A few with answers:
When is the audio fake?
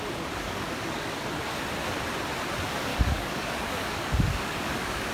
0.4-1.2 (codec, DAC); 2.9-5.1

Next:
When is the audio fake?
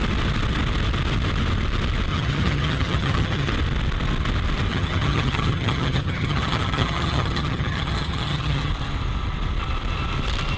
2.1-3.5 (vocoder, HiFi-GAN); 4.7-8.7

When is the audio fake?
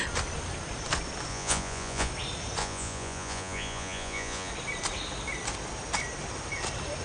1.3-2.1 (vocoder, Vocos); 2.6-4.5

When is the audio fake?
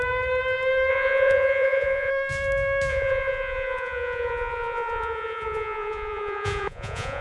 0.9-2.1 (vocoder, Vocos); 2.9-7.2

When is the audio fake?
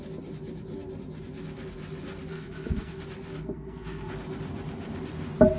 2.3-3.0 (codec, SNAC); 3.4-4.1